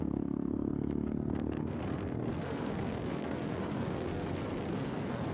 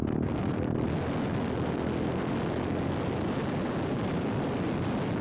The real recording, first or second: second